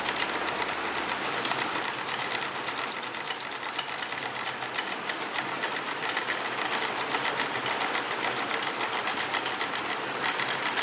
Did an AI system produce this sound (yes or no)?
yes